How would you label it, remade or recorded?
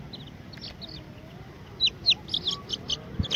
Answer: recorded